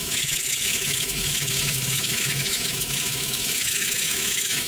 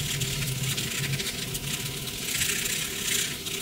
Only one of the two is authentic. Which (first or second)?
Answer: second